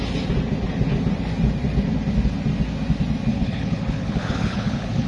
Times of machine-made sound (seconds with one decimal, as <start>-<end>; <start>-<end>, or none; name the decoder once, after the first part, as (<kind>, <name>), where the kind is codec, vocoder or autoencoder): 3.3-5.1 (codec, HILCodec)